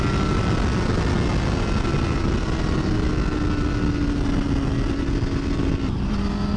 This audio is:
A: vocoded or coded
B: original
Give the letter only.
B